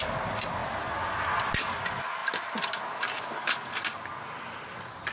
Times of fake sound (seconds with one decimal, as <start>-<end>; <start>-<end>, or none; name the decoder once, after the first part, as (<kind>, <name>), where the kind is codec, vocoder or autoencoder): none